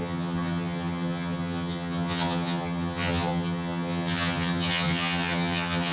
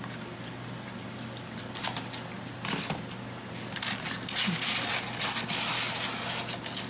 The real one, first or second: second